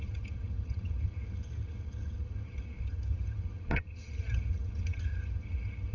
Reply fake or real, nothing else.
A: fake